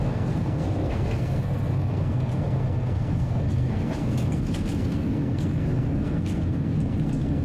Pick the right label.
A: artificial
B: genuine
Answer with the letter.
A